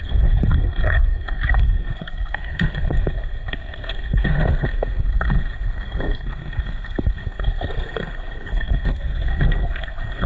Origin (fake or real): fake